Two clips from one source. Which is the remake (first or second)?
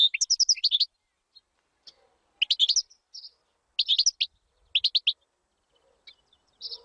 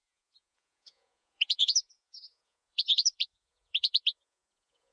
second